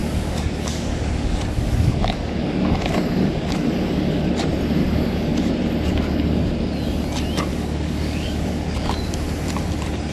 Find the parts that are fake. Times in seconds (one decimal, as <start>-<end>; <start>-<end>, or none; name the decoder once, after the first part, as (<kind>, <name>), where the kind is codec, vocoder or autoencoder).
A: 0.0-4.3 (codec, DAC); 4.8-5.5; 5.9-6.5; 7.5-8.9